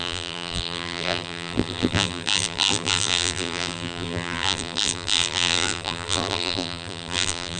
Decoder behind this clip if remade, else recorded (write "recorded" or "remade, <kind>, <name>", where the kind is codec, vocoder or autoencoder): remade, vocoder, BigVGAN v2